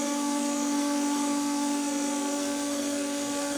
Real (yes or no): no